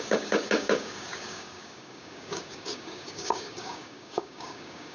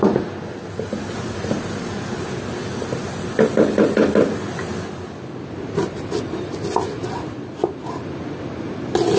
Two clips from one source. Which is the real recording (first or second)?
second